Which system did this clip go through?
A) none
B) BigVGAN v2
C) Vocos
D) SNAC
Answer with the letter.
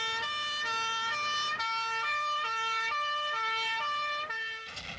A